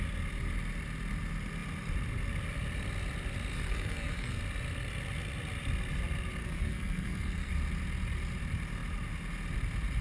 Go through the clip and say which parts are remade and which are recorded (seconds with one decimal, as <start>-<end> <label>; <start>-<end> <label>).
0.0-3.5 recorded; 3.5-4.4 remade; 4.4-6.4 recorded; 6.4-7.5 remade; 7.5-10.0 recorded